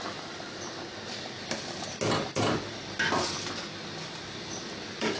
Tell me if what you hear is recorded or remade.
recorded